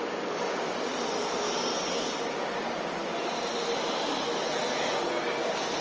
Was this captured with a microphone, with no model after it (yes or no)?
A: yes